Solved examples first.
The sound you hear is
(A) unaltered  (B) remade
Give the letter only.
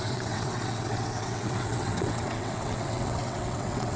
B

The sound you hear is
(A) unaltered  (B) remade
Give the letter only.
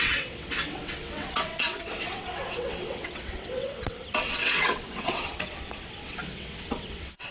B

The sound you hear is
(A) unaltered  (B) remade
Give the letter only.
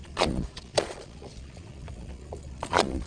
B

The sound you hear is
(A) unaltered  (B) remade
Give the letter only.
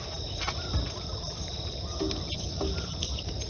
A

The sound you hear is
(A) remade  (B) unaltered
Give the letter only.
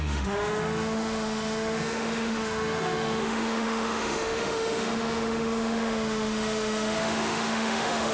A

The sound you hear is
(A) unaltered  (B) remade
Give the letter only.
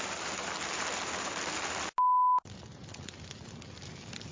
A